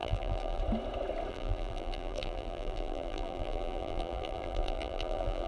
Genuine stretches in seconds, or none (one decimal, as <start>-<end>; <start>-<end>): 0.6-1.3